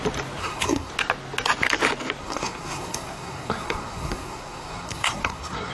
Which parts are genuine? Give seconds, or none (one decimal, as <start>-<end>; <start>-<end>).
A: 0.0-0.4; 0.9-2.2